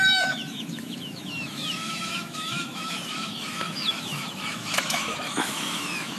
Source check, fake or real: fake